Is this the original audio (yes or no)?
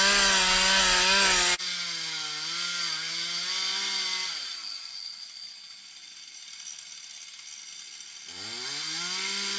yes